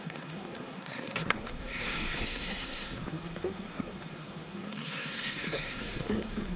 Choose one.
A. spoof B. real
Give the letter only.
A